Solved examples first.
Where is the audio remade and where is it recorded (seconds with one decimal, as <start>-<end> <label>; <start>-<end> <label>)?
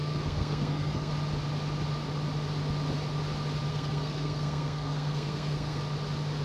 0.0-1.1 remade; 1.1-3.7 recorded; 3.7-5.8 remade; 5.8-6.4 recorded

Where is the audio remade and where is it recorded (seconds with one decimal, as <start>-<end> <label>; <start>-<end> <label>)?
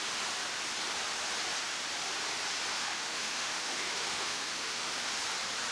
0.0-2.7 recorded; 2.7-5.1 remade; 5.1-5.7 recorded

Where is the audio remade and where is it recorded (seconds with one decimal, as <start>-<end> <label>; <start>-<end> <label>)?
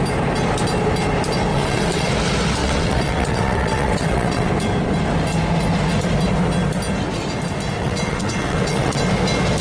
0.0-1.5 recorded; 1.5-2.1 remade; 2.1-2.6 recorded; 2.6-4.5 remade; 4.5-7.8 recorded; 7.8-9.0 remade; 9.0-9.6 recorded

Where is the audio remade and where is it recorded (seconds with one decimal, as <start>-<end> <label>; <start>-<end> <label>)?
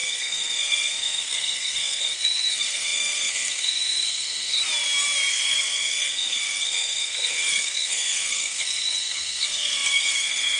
0.0-4.6 remade; 4.6-5.3 recorded; 5.3-10.6 remade